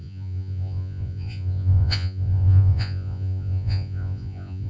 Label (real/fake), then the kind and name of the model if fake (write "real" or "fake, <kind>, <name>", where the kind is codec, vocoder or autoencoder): fake, vocoder, Vocos